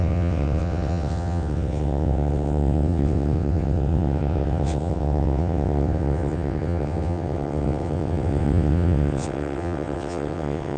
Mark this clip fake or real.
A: fake